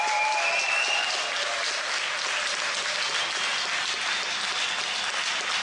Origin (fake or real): real